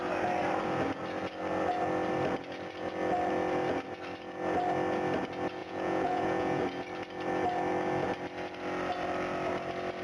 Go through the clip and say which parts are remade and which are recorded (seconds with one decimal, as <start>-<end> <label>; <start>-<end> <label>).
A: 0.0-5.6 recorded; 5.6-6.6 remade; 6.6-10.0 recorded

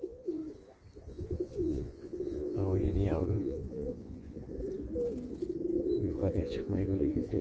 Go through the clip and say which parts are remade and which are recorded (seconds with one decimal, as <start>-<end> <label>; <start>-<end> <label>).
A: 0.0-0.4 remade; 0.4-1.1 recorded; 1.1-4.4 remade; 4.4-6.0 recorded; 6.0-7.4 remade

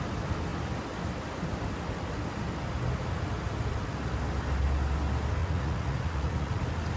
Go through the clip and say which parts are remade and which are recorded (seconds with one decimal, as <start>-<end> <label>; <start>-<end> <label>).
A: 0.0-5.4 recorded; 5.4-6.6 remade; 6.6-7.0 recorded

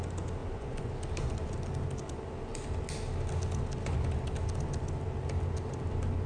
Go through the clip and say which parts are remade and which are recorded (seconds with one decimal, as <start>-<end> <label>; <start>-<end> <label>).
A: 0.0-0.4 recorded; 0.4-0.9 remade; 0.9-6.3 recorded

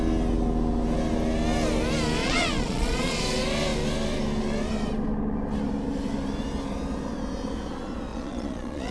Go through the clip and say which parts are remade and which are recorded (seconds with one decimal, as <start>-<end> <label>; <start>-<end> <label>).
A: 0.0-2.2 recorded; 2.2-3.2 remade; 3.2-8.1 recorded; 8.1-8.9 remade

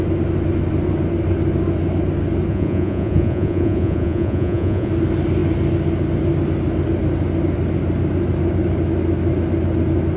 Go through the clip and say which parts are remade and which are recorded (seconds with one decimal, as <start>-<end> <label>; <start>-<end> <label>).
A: 0.0-2.5 recorded; 2.5-4.9 remade; 4.9-10.2 recorded